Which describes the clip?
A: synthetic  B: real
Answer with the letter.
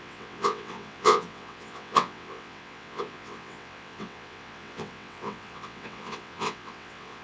A